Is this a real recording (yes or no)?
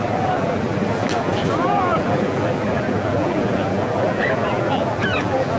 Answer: no